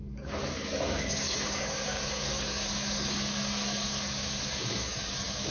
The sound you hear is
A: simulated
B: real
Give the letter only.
A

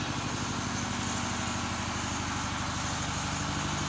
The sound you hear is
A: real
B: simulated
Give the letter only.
A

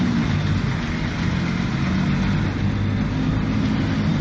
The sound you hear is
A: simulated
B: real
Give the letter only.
B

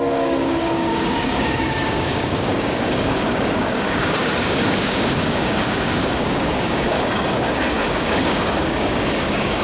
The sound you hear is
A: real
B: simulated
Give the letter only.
B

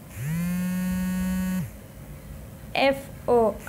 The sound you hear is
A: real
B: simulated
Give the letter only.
A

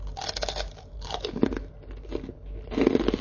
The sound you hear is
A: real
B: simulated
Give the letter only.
A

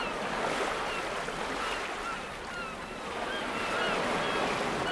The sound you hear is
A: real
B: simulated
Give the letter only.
A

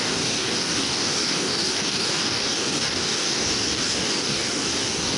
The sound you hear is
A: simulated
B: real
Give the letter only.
A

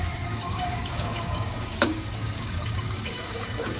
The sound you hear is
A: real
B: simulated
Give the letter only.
B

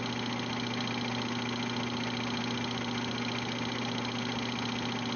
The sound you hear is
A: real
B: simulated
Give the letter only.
A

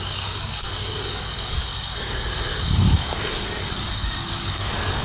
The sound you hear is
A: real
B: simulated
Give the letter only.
B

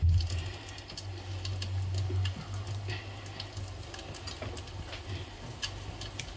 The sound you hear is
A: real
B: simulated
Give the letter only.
A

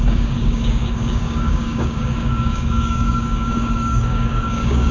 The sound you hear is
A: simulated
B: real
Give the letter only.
A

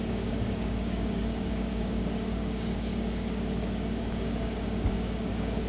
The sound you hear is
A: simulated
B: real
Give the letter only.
A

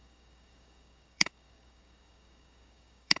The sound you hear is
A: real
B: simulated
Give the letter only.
B